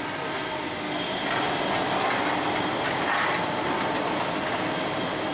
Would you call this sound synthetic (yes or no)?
no